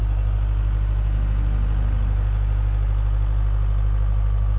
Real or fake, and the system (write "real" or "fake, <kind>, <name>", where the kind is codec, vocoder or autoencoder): real